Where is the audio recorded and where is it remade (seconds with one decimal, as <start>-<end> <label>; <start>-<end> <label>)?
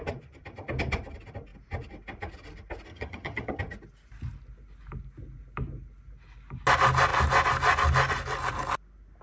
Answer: 0.0-2.9 recorded; 2.9-3.6 remade; 3.6-9.2 recorded